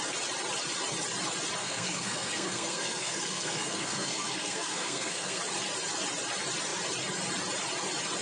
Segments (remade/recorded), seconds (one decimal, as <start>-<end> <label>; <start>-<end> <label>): 0.0-1.6 recorded; 1.6-5.4 remade; 5.4-8.2 recorded